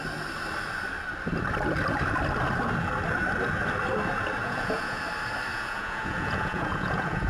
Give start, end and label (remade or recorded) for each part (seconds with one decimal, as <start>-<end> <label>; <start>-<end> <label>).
0.0-4.4 recorded; 4.4-5.0 remade; 5.0-5.5 recorded; 5.5-7.3 remade